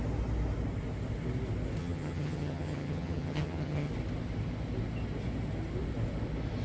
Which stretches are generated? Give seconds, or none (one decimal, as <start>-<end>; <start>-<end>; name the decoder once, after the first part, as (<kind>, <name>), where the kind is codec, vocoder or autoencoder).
1.8-3.9 (vocoder, HiFi-GAN)